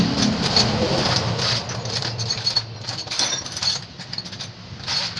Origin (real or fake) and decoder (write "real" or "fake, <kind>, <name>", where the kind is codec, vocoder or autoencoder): real